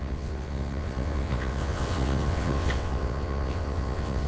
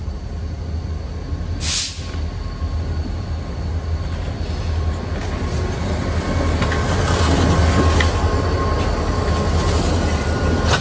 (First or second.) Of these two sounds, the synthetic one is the first